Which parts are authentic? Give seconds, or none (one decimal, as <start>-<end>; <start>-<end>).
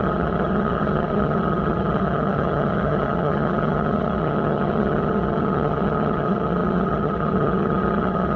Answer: none